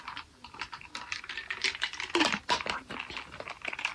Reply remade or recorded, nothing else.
recorded